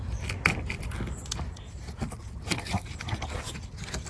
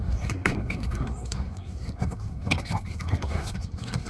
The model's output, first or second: second